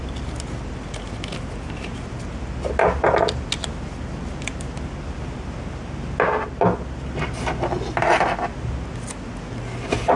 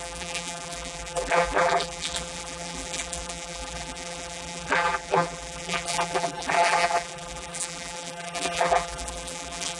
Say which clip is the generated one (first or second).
second